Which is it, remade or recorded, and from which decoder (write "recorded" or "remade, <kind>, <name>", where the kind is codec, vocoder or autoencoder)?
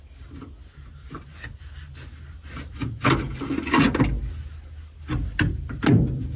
recorded